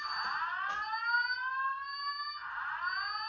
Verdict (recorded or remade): recorded